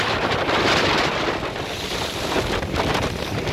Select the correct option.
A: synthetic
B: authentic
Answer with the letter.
A